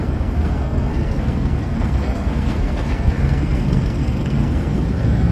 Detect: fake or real fake